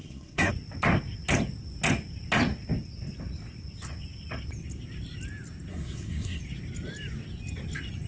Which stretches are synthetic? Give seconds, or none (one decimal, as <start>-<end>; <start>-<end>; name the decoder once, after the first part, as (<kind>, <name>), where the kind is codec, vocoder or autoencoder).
0.0-0.5 (codec, SNAC); 5.7-6.4